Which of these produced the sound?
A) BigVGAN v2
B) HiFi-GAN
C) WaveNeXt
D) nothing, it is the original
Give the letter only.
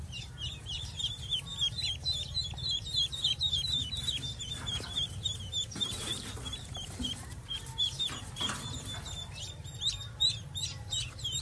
A